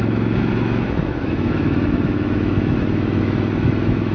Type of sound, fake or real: fake